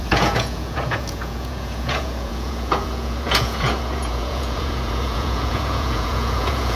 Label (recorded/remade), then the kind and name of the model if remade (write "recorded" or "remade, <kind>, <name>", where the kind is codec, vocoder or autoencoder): remade, vocoder, Vocos